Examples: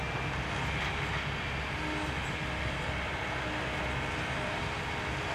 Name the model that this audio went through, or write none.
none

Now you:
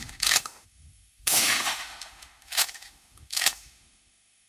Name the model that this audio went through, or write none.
autoencoder, DAC-VAE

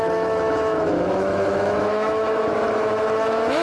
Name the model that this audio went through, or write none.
autoencoder, DAC-VAE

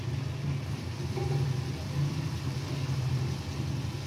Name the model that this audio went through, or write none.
none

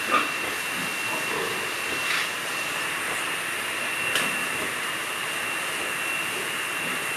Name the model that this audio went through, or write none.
none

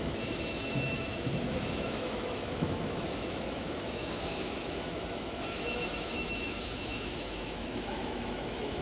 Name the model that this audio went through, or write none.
autoencoder, DAC-VAE